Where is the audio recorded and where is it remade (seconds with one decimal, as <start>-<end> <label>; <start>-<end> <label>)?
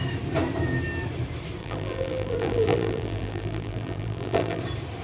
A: 0.0-1.6 recorded; 1.6-4.6 remade; 4.6-5.0 recorded